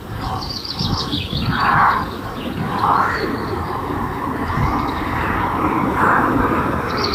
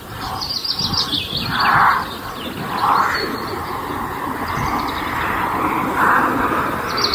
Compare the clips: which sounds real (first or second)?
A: second